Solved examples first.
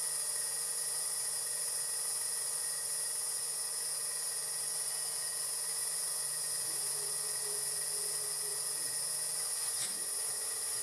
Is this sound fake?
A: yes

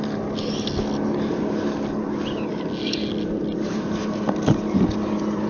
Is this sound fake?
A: no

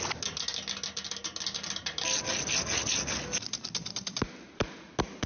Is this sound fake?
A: no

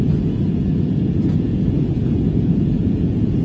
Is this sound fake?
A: yes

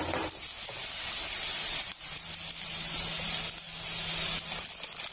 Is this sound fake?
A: no